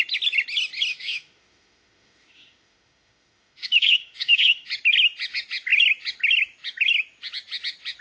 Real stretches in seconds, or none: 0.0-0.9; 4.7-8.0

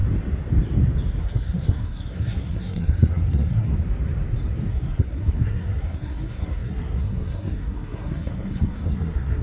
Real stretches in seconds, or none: 0.0-1.2; 3.7-4.7

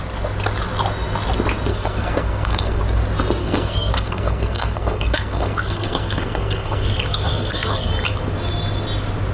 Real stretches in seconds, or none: 0.0-1.7; 2.8-3.4; 7.9-9.3